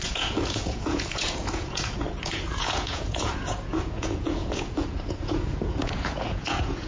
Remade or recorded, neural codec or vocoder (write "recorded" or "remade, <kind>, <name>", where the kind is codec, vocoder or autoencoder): remade, vocoder, Vocos